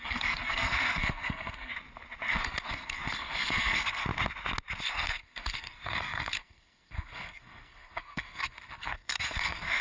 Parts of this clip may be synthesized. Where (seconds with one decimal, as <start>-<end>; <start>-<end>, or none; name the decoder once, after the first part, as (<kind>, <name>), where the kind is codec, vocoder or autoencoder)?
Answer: 0.0-1.7 (codec, SNAC); 2.3-4.0; 4.8-9.8